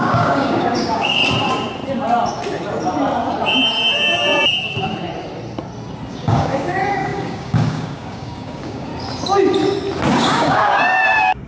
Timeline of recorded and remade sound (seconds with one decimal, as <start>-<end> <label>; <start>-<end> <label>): 0.0-1.2 remade; 1.2-6.1 recorded; 6.1-8.9 remade; 8.9-10.1 recorded; 10.1-11.5 remade